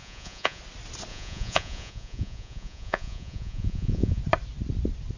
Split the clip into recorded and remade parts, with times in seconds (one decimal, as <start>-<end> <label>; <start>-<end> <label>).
0.0-0.6 remade; 0.6-1.1 recorded; 1.1-4.2 remade; 4.2-5.2 recorded